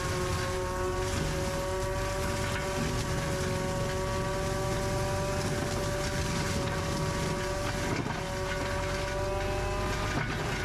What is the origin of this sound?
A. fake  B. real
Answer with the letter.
B